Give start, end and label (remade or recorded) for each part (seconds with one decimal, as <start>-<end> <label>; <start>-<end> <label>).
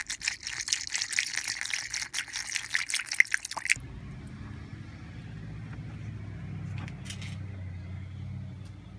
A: 0.0-9.0 recorded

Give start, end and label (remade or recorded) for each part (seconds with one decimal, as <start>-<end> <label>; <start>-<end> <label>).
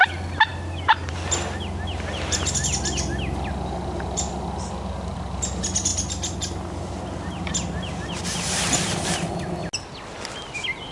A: 0.0-10.9 recorded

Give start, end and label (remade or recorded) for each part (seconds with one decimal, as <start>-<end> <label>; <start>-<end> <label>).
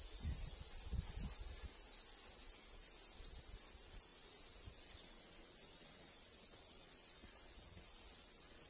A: 0.0-4.1 recorded; 4.1-8.7 remade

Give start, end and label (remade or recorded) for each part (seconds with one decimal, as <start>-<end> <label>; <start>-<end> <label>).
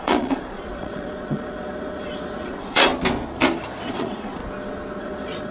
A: 0.0-2.9 remade; 2.9-3.9 recorded; 3.9-4.4 remade; 4.4-5.0 recorded; 5.0-5.5 remade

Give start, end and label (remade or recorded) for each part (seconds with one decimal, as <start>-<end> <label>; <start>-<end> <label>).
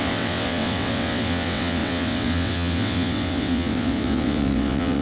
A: 0.0-5.0 remade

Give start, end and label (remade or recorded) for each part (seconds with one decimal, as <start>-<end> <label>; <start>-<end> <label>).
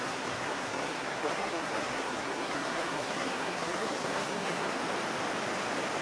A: 0.0-4.8 remade; 4.8-6.0 recorded